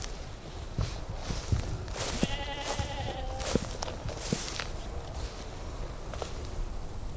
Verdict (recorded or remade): recorded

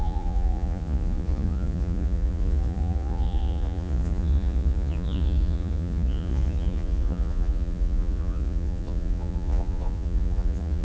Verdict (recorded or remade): remade